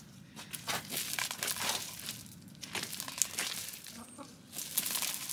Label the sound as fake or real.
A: real